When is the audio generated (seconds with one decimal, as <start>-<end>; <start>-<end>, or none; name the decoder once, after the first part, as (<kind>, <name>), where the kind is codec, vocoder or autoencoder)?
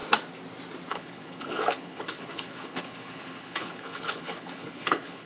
0.9-5.3 (codec, HILCodec)